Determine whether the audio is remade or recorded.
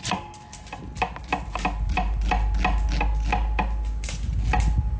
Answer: recorded